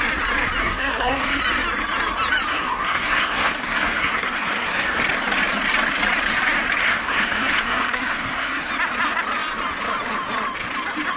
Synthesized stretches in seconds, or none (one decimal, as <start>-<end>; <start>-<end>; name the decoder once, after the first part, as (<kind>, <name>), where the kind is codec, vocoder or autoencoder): 0.6-1.4 (codec, SNAC); 2.5-5.0; 6.8-8.7